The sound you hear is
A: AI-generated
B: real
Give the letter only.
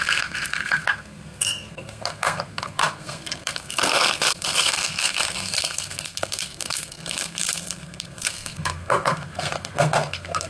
A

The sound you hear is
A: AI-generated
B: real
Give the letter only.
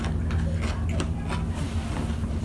B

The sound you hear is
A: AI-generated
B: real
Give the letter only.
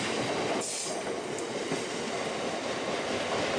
B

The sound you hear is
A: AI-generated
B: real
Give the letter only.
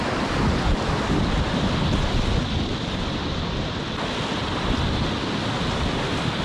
B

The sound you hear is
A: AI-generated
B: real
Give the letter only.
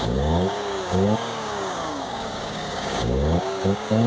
A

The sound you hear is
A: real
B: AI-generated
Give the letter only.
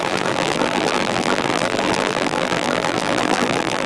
B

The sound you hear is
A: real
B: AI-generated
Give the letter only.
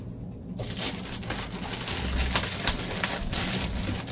A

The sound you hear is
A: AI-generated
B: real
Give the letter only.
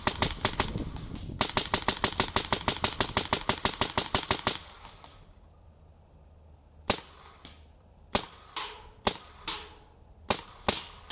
B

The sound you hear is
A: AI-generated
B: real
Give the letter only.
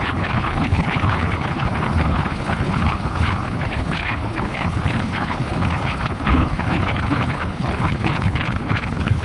A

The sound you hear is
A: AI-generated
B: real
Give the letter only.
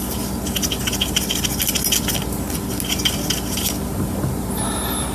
B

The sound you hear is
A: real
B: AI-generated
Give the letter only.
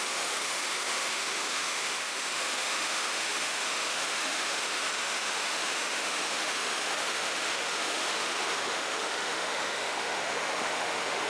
B